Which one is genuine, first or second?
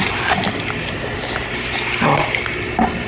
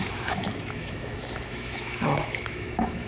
first